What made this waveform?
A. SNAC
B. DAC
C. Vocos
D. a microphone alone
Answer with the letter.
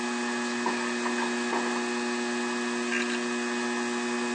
D